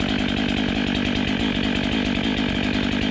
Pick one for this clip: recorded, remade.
recorded